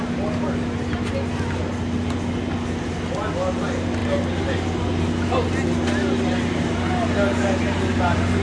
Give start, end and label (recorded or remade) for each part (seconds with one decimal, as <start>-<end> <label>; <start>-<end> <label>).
0.0-8.4 recorded